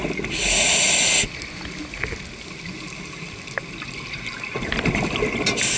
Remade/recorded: recorded